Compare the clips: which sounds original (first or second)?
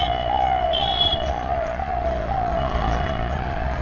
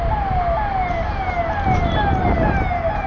second